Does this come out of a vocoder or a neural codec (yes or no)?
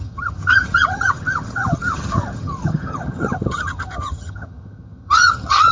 yes